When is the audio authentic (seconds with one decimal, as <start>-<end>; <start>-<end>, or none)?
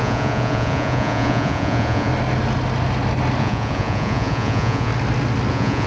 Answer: 2.1-3.4; 4.9-5.5